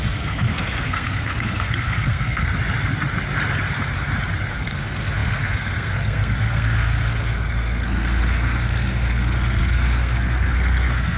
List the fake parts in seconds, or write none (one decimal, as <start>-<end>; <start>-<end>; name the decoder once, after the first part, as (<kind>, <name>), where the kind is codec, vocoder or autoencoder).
0.0-2.5 (codec, SNAC); 4.5-11.2